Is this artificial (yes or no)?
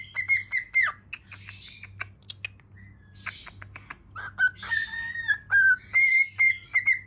no